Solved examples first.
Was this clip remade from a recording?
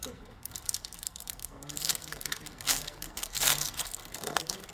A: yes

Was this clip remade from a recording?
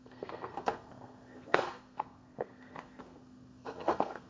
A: yes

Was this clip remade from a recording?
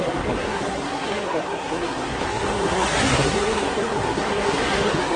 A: yes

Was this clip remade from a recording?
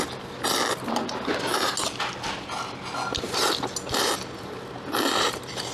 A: no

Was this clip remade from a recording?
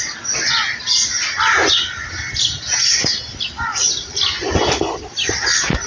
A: no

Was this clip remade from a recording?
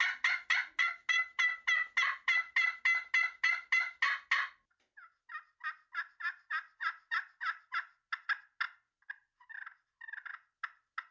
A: no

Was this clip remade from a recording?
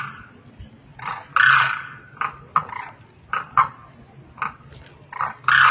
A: no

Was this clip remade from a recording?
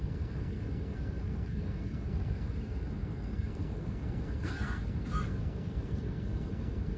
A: yes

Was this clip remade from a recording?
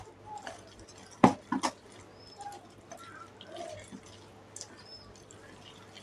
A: no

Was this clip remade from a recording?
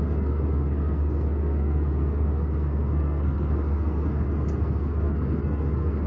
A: yes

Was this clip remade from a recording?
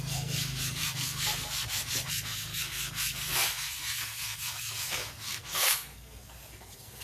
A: yes